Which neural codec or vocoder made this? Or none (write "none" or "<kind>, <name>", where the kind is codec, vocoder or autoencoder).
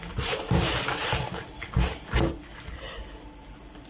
none